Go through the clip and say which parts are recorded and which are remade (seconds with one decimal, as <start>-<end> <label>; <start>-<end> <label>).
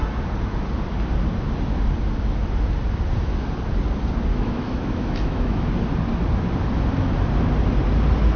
0.0-4.3 recorded; 4.3-5.7 remade; 5.7-8.4 recorded